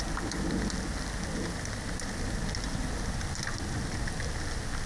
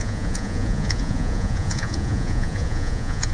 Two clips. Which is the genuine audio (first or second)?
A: first